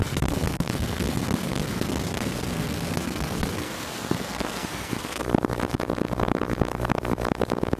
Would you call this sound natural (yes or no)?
no